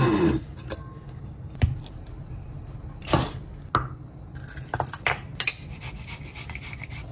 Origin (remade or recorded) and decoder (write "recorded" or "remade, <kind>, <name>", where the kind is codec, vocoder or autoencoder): recorded